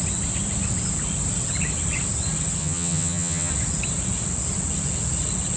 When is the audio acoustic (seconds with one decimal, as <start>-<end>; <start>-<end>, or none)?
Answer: 0.0-2.6; 3.5-5.6